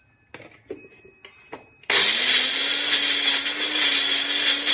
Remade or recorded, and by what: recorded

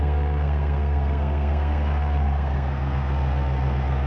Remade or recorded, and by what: remade, codec, SNAC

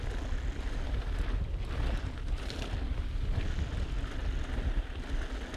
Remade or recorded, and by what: recorded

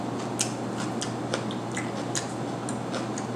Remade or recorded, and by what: recorded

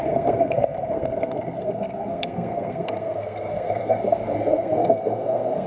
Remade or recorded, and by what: remade, codec, SNAC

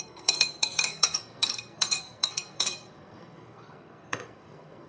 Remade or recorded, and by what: remade, codec, SNAC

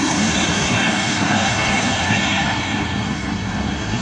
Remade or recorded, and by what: remade, codec, SNAC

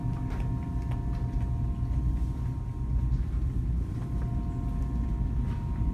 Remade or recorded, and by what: recorded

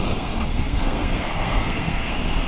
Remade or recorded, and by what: remade, codec, SNAC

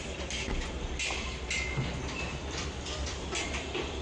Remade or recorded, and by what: recorded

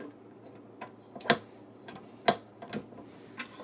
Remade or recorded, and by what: recorded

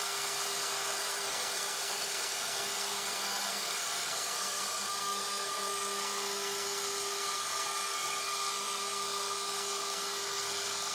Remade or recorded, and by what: remade, codec, SNAC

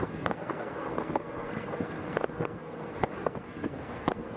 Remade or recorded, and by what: remade, codec, SNAC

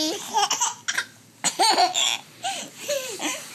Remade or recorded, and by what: recorded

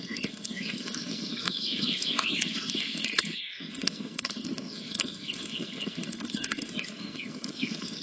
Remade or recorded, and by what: remade, codec, SNAC